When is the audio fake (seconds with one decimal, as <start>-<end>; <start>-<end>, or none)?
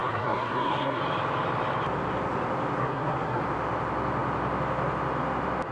0.0-1.0; 2.8-3.4